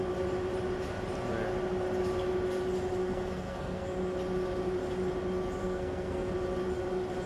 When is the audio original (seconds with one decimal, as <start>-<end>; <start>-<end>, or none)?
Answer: 0.0-3.0; 3.9-5.6; 6.3-7.3